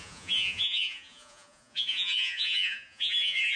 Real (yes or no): no